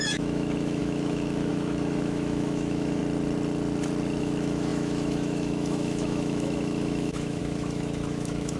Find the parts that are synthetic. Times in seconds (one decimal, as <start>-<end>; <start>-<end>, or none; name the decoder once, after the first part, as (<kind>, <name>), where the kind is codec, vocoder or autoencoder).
0.0-3.0 (autoencoder, DAC-VAE); 4.2-8.6